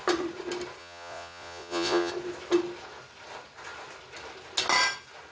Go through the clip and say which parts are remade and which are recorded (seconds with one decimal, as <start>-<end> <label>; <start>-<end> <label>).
0.0-0.8 recorded; 0.8-2.1 remade; 2.1-5.3 recorded